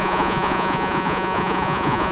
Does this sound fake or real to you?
fake